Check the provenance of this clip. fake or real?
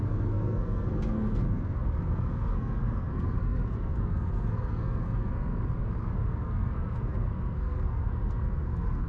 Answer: fake